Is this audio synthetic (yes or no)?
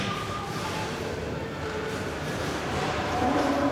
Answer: yes